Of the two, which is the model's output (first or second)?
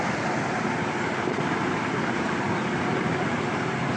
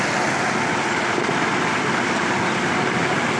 first